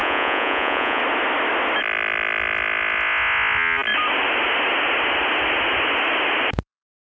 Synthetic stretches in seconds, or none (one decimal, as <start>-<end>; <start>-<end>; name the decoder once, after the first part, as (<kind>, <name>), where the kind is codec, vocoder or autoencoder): 0.0-1.0 (vocoder, Vocos)